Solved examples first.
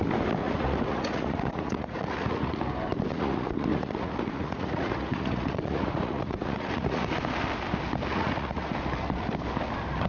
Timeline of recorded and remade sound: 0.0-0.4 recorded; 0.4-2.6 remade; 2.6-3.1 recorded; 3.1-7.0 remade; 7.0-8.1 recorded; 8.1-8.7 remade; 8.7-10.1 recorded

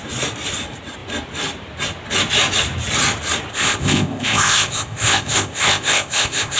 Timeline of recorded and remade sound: 0.0-3.5 recorded; 3.5-6.6 remade

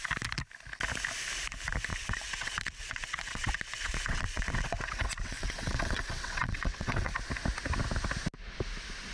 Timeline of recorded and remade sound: 0.0-1.9 recorded; 1.9-7.1 remade; 7.1-9.1 recorded

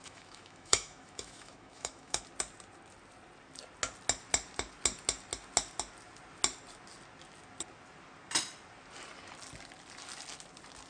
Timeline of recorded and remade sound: 0.0-2.2 remade; 2.2-10.9 recorded

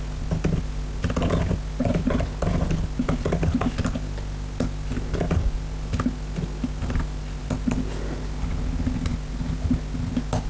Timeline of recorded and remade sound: 0.0-10.5 recorded

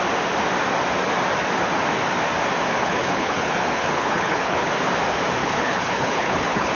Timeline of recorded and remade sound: 0.0-2.8 recorded; 2.8-4.7 remade; 4.7-5.4 recorded; 5.4-6.7 remade